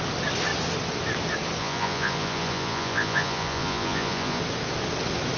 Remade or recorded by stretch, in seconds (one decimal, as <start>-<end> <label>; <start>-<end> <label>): 0.0-1.6 recorded; 1.6-4.4 remade; 4.4-5.4 recorded